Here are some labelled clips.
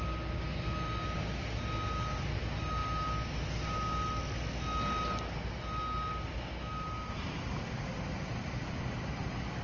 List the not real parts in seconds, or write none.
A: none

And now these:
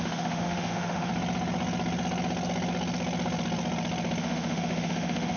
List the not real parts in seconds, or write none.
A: 0.0-1.1 (autoencoder, DAC-VAE); 4.2-5.4

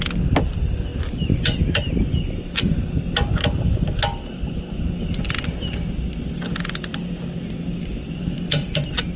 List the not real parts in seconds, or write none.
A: none

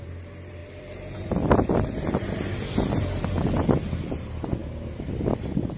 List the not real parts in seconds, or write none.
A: 0.6-4.1 (vocoder, BigVGAN v2); 4.6-5.8